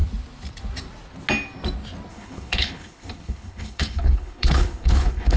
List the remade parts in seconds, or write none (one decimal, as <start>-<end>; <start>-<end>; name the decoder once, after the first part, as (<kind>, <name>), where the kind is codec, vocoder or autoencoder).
2.1-5.4 (codec, HILCodec)